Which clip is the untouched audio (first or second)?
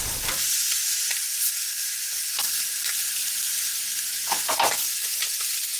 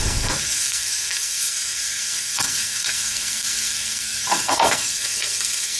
first